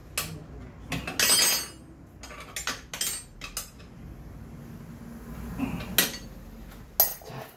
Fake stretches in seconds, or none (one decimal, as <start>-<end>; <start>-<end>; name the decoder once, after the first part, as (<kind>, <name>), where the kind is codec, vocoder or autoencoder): 7.1-7.6 (vocoder, BigVGAN v2)